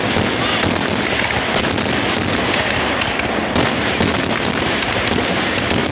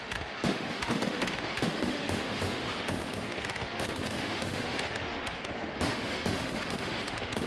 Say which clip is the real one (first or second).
first